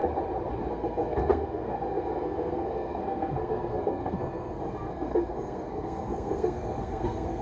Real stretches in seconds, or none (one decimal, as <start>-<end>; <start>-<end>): 0.0-0.7